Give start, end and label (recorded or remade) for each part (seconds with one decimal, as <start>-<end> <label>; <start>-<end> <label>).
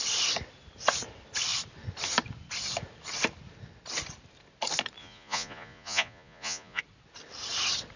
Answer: 0.0-5.0 recorded; 5.0-6.8 remade; 6.8-8.0 recorded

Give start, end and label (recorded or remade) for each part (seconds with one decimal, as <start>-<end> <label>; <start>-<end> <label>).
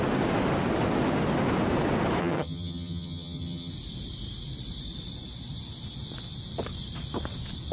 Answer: 0.0-2.2 recorded; 2.2-3.7 remade; 3.7-7.7 recorded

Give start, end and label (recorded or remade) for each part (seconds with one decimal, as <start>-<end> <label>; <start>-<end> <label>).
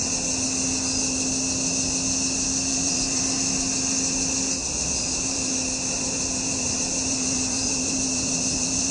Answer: 0.0-2.7 recorded; 2.7-3.2 remade; 3.2-4.6 recorded; 4.6-5.5 remade; 5.5-5.9 recorded; 5.9-8.9 remade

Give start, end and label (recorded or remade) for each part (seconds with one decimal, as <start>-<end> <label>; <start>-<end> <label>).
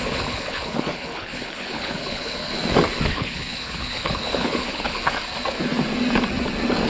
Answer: 0.0-2.5 remade; 2.5-3.1 recorded; 3.1-5.0 remade; 5.0-6.9 recorded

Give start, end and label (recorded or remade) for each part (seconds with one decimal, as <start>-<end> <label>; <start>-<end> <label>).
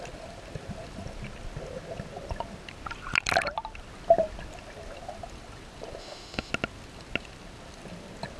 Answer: 0.0-6.0 recorded; 6.0-6.5 remade; 6.5-8.4 recorded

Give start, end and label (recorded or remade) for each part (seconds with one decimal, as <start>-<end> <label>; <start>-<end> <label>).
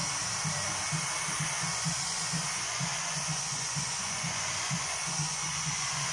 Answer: 0.0-1.6 recorded; 1.6-6.1 remade